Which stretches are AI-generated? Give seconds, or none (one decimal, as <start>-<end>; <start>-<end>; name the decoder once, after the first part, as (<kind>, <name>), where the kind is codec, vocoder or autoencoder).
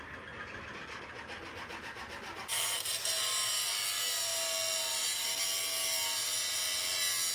2.5-3.7 (vocoder, BigVGAN v2)